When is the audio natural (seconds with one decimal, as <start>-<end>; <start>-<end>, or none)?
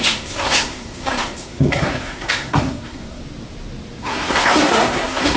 3.2-4.0